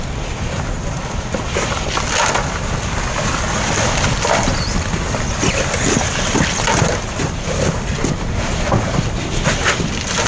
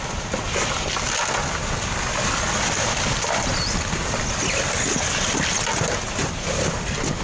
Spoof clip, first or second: first